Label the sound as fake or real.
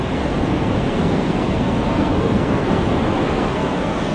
fake